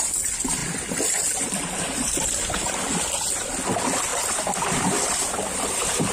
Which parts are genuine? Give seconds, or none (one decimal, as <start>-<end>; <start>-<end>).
0.0-0.6; 2.7-6.1